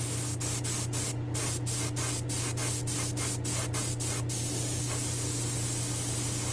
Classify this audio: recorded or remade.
recorded